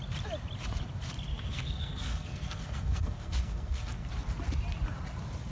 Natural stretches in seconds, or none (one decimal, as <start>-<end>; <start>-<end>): 0.0-1.3; 4.1-5.5

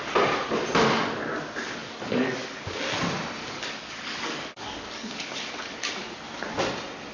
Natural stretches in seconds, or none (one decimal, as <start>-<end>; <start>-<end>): 0.0-1.8; 2.8-3.4; 5.9-7.1

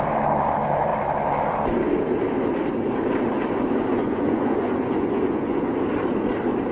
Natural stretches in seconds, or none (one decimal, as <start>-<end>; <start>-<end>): 0.0-3.9; 5.7-6.7

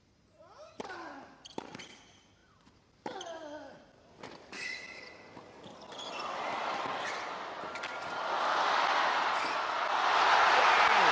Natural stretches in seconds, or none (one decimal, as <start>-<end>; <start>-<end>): 0.0-11.1

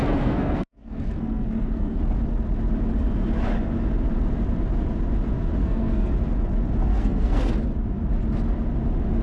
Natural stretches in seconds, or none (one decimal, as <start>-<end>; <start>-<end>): 2.0-5.6; 6.1-6.9; 7.5-9.2